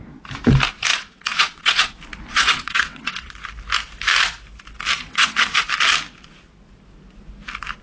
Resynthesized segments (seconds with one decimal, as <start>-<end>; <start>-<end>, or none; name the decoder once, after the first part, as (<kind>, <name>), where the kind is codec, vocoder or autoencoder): 0.9-1.9 (vocoder, WaveNeXt); 2.3-3.3; 5.0-5.6